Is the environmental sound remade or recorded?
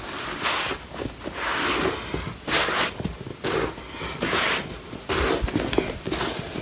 recorded